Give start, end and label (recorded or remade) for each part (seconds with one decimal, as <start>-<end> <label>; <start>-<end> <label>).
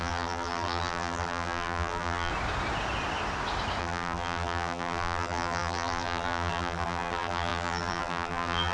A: 0.0-2.3 remade; 2.3-3.8 recorded; 3.8-8.7 remade